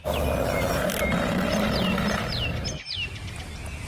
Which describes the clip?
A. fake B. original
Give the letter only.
B